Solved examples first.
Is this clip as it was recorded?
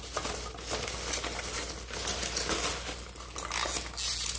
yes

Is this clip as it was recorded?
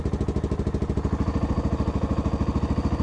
yes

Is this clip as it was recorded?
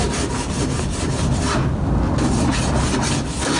yes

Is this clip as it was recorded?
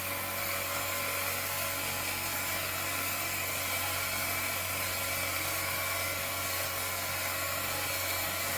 no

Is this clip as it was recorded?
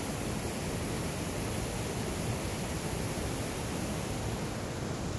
yes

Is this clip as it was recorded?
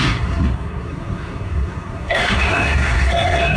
no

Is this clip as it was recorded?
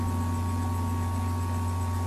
yes